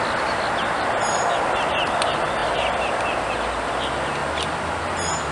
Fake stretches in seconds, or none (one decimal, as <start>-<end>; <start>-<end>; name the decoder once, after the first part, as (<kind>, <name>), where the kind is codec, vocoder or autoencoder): 2.4-3.3 (vocoder, BigVGAN v2); 4.2-4.8